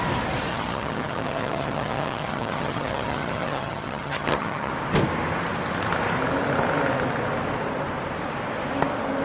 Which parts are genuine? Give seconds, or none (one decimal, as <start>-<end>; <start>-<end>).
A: 0.0-0.5; 4.7-9.2